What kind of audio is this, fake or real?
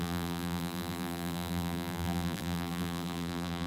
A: fake